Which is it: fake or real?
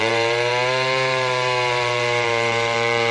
fake